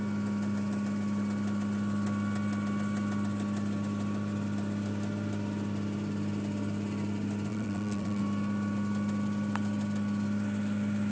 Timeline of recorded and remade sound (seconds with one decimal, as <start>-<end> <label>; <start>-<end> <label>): 0.0-7.5 recorded; 7.5-8.2 remade; 8.2-11.1 recorded